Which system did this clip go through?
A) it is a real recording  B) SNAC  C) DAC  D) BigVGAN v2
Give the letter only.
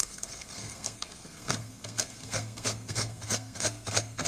B